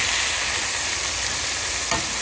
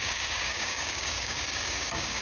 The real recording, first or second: first